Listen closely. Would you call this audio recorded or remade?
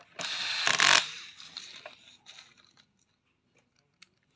recorded